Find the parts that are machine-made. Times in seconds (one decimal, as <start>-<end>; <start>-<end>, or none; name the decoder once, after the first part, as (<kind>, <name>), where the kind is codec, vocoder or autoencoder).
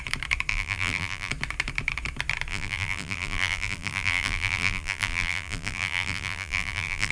0.5-1.3 (vocoder, BigVGAN v2); 2.5-7.1